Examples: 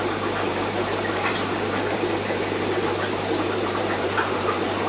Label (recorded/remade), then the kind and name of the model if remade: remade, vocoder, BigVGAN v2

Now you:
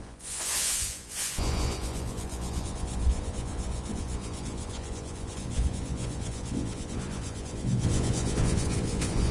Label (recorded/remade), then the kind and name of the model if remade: remade, vocoder, Vocos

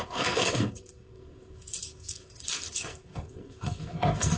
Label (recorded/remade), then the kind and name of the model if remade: remade, codec, SNAC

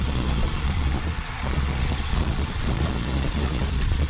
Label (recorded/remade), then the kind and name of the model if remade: remade, vocoder, Vocos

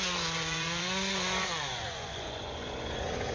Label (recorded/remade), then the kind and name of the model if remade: remade, vocoder, Vocos